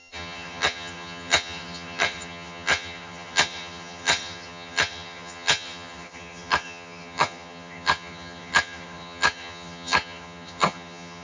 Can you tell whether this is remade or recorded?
remade